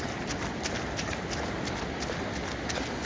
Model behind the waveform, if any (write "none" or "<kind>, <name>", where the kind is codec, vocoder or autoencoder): none